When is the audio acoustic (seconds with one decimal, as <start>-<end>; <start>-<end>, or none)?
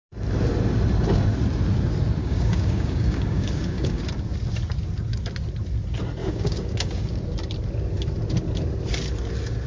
0.0-2.2; 4.0-6.2; 7.2-9.7